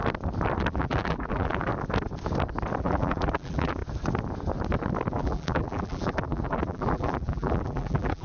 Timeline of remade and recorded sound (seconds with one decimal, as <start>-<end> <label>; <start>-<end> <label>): 0.0-0.7 recorded; 0.7-1.7 remade; 1.7-2.8 recorded; 2.8-3.8 remade; 3.8-5.1 recorded; 5.1-8.2 remade

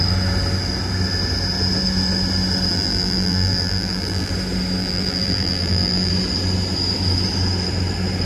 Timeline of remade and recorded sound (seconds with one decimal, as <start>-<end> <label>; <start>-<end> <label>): 0.0-2.7 recorded; 2.7-4.3 remade; 4.3-4.8 recorded; 4.8-6.1 remade; 6.1-8.2 recorded

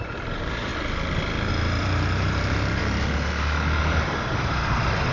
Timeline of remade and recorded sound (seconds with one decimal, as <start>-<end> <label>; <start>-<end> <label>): 0.0-0.7 remade; 0.7-1.5 recorded; 1.5-2.8 remade; 2.8-3.8 recorded; 3.8-5.1 remade

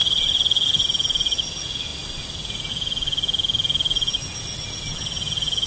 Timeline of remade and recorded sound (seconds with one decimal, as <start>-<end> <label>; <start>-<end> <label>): 0.0-5.7 recorded

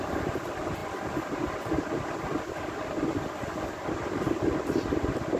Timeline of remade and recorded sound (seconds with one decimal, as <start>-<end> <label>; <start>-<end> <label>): 0.0-5.4 recorded